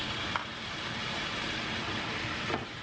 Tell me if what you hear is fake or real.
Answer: fake